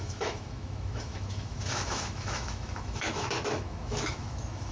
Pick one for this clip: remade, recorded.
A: remade